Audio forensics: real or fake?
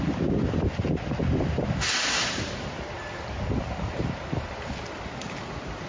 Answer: real